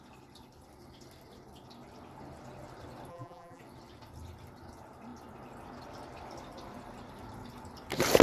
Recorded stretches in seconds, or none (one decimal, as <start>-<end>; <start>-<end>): 0.0-3.1; 3.6-8.2